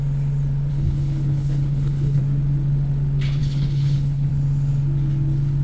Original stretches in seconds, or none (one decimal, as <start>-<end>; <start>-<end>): 0.0-0.7; 2.2-3.4; 4.3-5.6